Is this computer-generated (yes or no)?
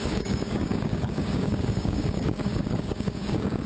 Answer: yes